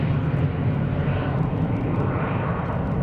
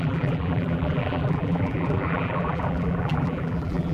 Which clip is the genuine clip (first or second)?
first